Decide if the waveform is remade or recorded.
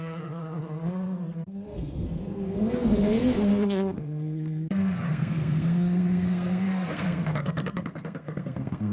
remade